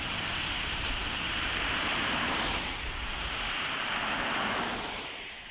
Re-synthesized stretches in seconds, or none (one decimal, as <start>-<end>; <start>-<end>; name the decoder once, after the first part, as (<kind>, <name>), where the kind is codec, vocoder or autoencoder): 0.0-5.5 (vocoder, BigVGAN v2)